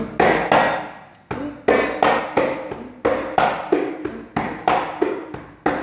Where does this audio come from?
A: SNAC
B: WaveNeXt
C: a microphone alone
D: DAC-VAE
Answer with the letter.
C